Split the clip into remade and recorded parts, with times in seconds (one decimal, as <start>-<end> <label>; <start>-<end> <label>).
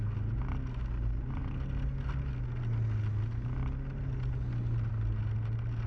0.0-5.9 recorded